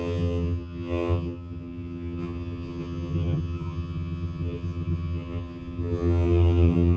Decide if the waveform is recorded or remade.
remade